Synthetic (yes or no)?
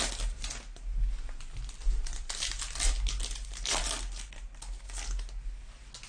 no